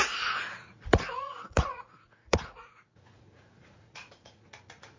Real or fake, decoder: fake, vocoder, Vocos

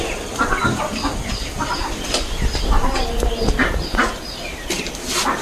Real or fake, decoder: real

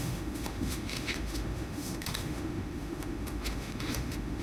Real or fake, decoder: fake, autoencoder, DAC-VAE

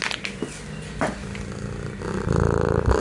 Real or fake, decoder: real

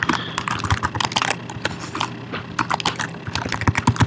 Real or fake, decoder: real